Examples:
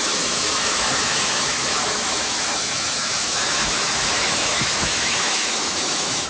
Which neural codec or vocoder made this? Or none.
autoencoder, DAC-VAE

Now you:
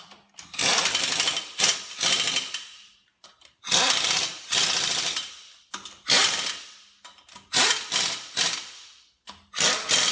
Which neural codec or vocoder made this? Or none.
none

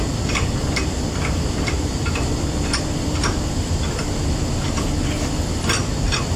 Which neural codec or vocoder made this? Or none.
none